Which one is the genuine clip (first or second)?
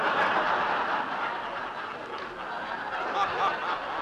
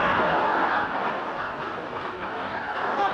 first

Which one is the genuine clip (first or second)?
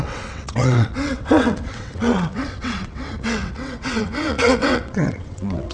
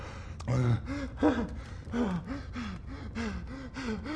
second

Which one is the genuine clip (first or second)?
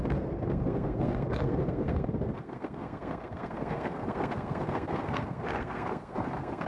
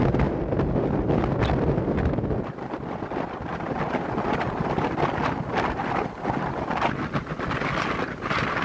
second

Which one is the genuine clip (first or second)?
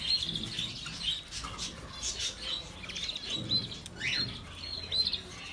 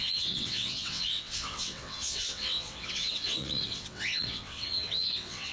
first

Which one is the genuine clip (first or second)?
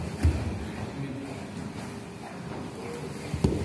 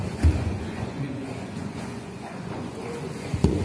first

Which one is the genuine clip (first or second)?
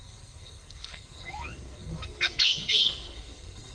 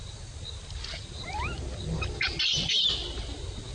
second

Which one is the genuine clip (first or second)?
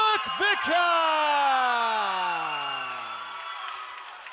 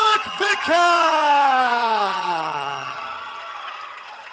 first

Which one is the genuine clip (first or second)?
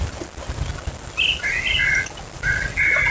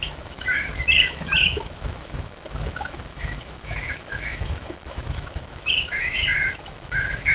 first